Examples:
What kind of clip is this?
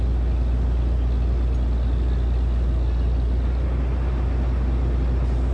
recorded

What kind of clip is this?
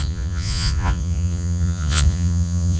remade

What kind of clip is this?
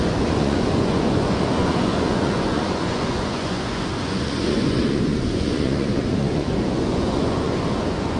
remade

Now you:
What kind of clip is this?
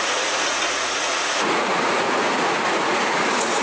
remade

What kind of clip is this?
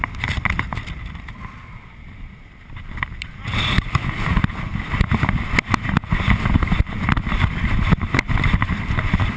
recorded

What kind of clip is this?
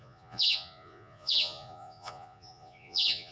remade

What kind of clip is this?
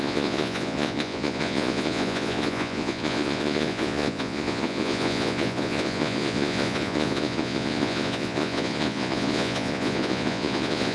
remade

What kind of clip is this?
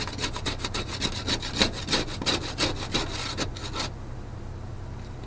recorded